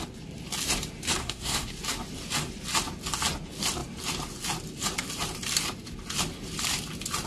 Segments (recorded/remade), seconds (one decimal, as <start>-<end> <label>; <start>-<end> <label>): 0.0-1.2 recorded; 1.2-1.7 remade; 1.7-7.3 recorded

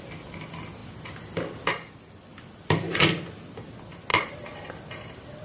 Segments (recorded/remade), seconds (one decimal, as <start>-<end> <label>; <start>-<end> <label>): 0.0-2.3 recorded; 2.3-2.9 remade; 2.9-4.1 recorded; 4.1-4.8 remade; 4.8-5.4 recorded

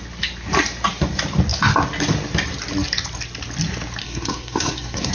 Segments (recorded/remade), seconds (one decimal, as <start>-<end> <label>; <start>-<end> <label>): 0.0-4.0 recorded; 4.0-5.1 remade

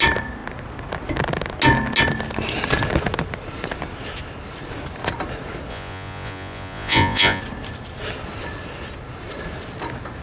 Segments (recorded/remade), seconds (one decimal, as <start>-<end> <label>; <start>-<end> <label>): 0.0-5.7 recorded; 5.7-7.4 remade; 7.4-10.2 recorded